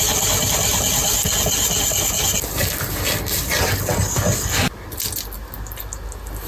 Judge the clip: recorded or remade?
recorded